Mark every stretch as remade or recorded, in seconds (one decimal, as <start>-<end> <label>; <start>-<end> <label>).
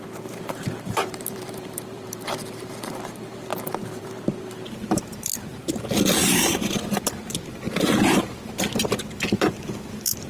0.0-3.5 remade; 3.5-4.0 recorded; 4.0-5.5 remade; 5.5-6.9 recorded; 6.9-10.3 remade